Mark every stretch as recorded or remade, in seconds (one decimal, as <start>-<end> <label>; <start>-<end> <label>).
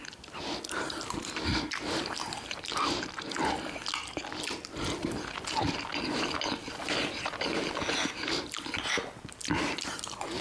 0.0-10.4 recorded